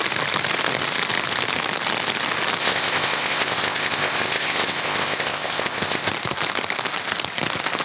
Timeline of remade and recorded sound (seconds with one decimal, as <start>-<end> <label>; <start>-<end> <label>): 0.0-2.6 recorded; 2.6-6.1 remade; 6.1-7.8 recorded